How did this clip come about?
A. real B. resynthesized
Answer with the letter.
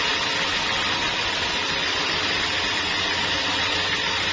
A